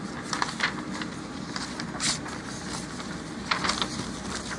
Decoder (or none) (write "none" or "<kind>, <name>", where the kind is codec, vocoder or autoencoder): none